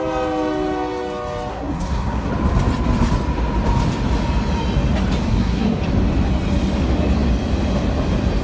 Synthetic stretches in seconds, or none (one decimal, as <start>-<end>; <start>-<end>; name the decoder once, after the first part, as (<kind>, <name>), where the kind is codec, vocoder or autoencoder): 1.5-2.3 (codec, SNAC); 5.3-5.8